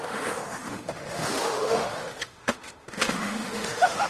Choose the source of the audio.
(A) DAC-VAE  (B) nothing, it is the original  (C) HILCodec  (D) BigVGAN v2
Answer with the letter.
A